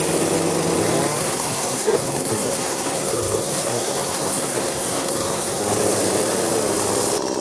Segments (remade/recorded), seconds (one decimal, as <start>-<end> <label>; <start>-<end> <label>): 0.0-1.2 recorded; 1.2-5.6 remade; 5.6-7.4 recorded